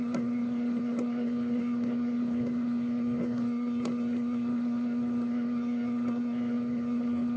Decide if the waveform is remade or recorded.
remade